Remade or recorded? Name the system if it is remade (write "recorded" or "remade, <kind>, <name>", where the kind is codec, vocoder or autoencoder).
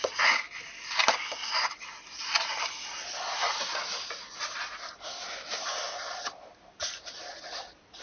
recorded